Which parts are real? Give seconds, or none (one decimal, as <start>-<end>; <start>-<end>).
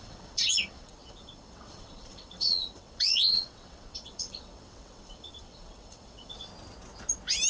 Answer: 6.5-7.5